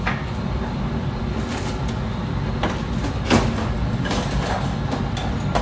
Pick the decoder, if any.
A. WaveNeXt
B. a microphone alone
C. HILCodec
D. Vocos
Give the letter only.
B